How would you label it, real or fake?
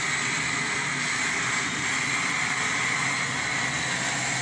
real